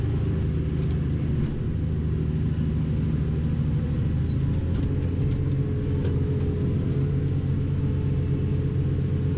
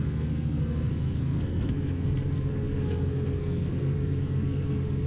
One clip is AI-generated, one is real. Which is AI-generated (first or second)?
second